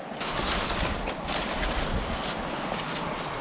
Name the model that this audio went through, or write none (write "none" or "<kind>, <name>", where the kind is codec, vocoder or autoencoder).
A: none